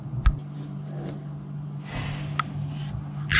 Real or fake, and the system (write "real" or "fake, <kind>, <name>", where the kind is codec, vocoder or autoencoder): real